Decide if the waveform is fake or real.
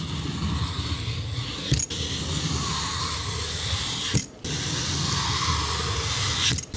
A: real